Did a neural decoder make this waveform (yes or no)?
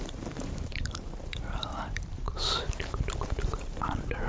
yes